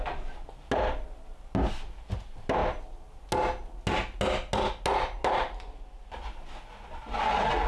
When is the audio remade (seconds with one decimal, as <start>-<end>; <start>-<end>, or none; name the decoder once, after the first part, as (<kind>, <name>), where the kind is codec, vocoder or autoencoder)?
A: none